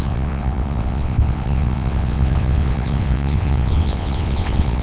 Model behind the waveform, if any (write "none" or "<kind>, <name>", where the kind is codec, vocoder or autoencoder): vocoder, WaveNeXt